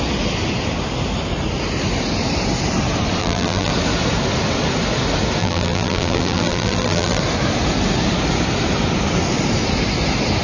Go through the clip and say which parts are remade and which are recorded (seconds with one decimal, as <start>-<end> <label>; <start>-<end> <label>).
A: 0.0-3.2 recorded; 3.2-3.7 remade; 3.7-5.4 recorded; 5.4-7.2 remade; 7.2-10.4 recorded